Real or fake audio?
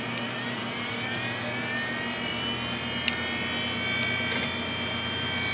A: real